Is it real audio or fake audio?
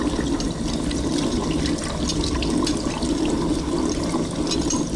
real